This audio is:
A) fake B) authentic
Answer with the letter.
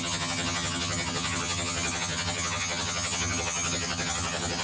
A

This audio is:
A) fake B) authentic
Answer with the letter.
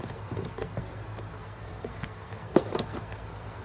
A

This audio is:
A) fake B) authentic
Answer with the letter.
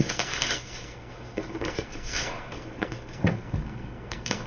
A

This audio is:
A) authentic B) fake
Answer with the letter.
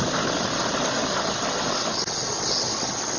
A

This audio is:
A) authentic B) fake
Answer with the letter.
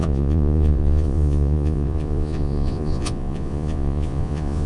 B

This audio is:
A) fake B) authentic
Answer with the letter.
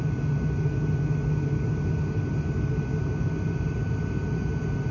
B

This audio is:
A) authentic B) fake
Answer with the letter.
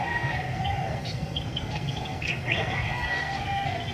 B